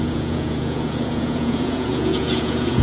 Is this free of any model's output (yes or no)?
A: no